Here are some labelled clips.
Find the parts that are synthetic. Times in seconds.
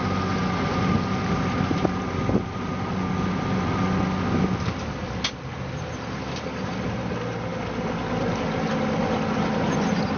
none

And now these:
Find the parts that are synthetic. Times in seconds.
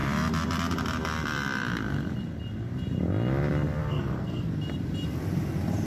3.8-4.5 (codec, SNAC)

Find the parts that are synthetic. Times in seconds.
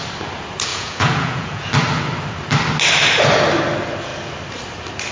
0.7-1.7 (vocoder, Vocos)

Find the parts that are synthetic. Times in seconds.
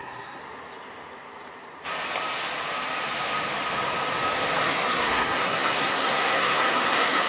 0.0-0.4 (codec, SNAC); 4.6-7.3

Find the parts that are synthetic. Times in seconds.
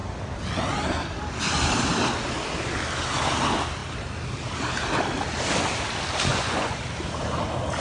6.3-6.8 (vocoder, Vocos)